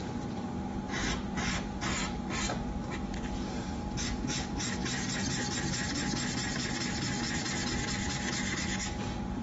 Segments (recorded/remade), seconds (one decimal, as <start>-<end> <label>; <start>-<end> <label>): 0.0-4.8 remade; 4.8-9.4 recorded